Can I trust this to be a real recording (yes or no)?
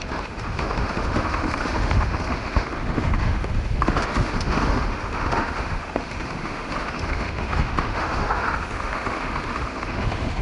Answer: no